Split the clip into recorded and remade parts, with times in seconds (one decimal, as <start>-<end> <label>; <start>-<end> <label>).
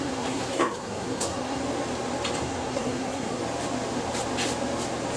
0.0-1.6 remade; 1.6-2.4 recorded; 2.4-3.4 remade; 3.4-5.2 recorded